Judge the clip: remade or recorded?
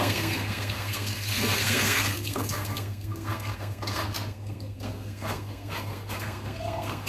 remade